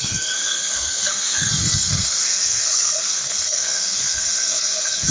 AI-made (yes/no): yes